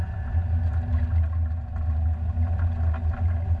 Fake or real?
real